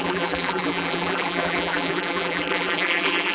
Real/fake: fake